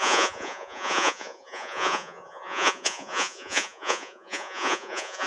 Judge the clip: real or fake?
fake